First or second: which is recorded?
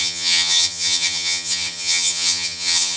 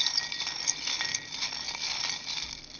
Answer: second